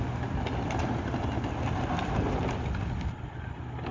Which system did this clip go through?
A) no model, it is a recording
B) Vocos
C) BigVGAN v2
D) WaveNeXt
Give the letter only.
A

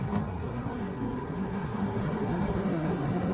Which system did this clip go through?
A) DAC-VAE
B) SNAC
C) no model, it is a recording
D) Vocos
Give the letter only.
B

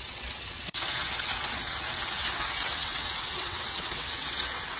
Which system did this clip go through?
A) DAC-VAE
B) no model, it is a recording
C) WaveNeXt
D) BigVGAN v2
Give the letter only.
C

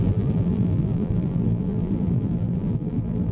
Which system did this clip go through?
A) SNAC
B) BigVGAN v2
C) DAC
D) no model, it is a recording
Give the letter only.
B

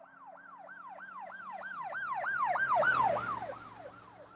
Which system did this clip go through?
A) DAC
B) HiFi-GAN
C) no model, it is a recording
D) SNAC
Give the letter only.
C